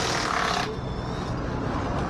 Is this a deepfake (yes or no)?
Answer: no